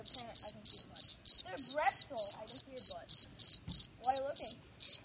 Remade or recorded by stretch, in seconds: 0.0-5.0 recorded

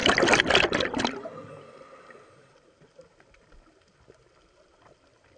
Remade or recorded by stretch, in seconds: 0.0-5.4 recorded

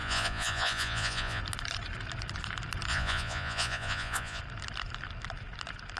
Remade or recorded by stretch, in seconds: 0.0-1.4 remade; 1.4-2.9 recorded; 2.9-4.4 remade; 4.4-6.0 recorded